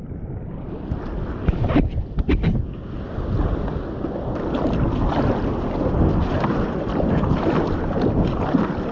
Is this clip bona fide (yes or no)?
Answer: yes